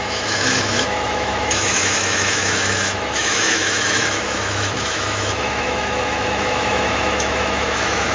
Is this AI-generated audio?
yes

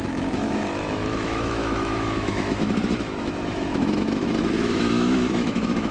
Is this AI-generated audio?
yes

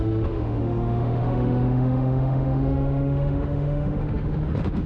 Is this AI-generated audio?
yes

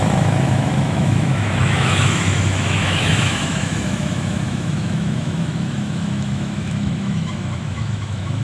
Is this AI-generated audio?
yes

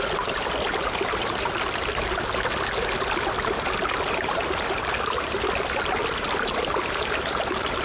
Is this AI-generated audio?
no